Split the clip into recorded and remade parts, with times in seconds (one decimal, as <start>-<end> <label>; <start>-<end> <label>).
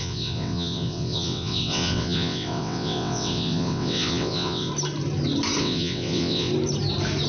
0.0-4.7 remade; 4.7-5.6 recorded; 5.6-6.5 remade; 6.5-7.3 recorded